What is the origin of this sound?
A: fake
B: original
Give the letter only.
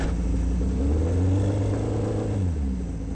B